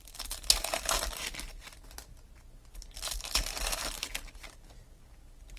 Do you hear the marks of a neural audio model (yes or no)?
no